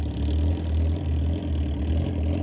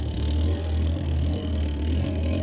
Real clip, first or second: first